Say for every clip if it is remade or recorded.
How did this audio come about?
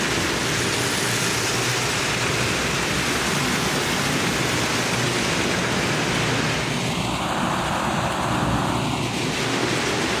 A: recorded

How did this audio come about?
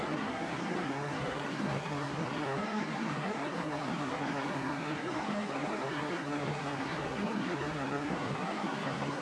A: remade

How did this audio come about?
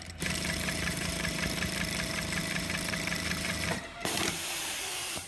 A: remade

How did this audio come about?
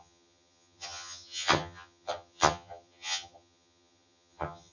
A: remade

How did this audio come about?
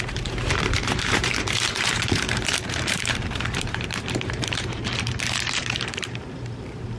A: remade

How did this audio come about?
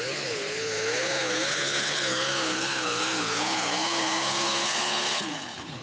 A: remade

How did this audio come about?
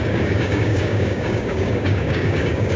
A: remade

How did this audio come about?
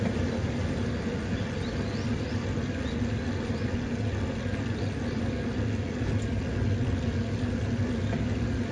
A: recorded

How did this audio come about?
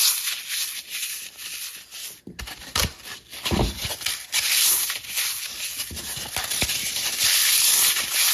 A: remade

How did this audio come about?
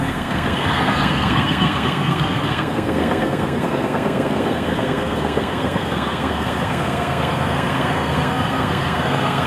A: remade